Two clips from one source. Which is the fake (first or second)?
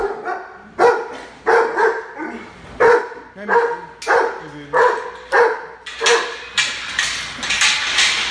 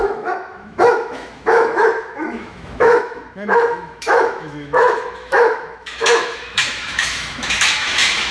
second